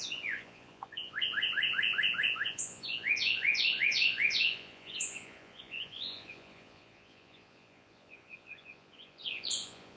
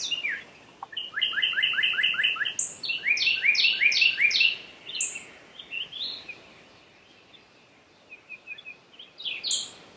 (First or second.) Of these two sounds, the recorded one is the second